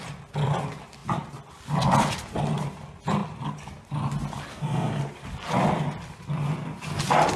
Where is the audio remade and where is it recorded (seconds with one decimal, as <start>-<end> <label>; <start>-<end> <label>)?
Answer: 0.0-4.5 recorded; 4.5-5.0 remade; 5.0-7.4 recorded